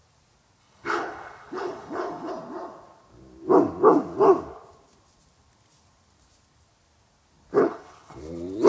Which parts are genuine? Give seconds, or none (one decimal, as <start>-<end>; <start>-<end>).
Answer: 0.0-0.6; 2.3-7.6; 8.2-8.7